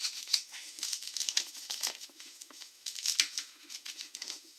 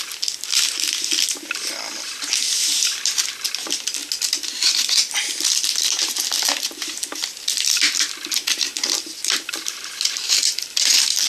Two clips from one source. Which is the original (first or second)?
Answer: second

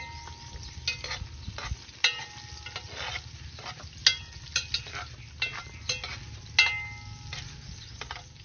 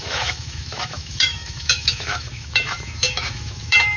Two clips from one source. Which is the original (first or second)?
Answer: first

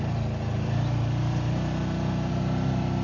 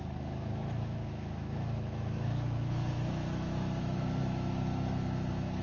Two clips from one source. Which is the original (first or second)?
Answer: first